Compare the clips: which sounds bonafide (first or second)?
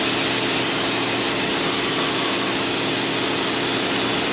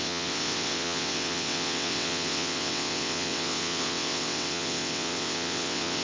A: first